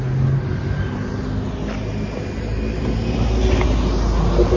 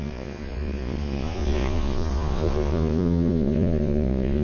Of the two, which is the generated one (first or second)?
second